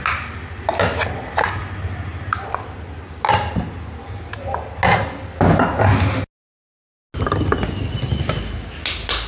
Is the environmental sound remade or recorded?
recorded